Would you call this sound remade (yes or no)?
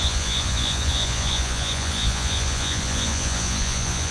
yes